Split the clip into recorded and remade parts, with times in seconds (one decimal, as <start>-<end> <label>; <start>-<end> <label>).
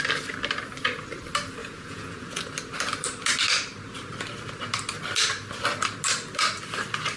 0.0-1.6 recorded; 1.6-2.4 remade; 2.4-7.2 recorded